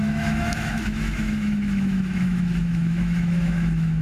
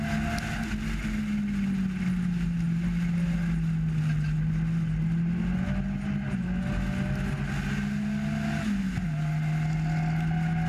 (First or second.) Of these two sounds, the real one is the second